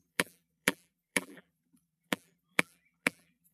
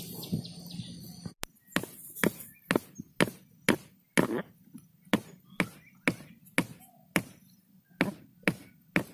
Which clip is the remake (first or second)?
first